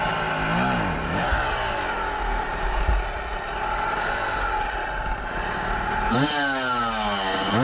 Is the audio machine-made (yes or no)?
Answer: no